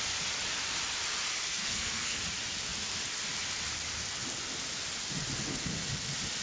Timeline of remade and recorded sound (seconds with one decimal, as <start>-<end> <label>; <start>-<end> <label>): 0.0-1.6 recorded; 1.6-2.2 remade; 2.2-6.4 recorded